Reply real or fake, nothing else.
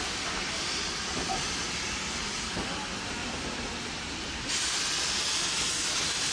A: real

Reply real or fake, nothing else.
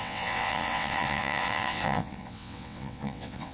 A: fake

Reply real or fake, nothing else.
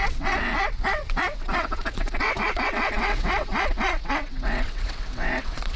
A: fake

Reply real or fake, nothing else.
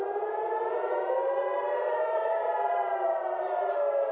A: real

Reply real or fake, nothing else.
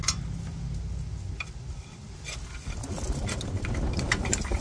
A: real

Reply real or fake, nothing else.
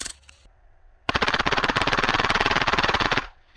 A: fake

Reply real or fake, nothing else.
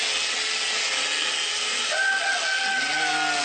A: real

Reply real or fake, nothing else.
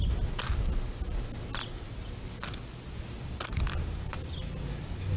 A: real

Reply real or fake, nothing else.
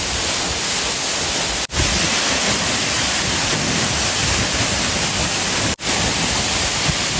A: real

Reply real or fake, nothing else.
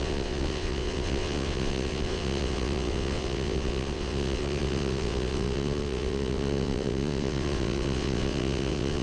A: fake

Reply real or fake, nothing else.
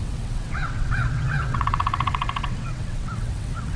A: fake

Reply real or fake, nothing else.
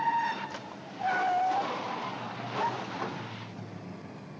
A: real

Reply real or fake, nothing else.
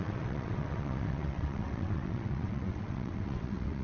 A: fake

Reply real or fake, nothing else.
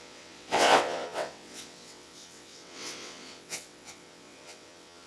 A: fake